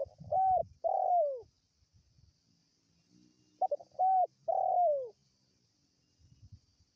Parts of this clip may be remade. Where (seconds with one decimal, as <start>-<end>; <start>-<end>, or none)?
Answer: none